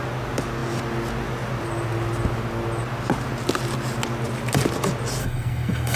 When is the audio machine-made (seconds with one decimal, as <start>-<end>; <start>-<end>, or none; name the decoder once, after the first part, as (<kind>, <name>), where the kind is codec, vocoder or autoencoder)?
5.2-6.0 (codec, SNAC)